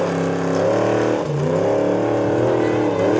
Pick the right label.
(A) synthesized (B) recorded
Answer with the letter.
B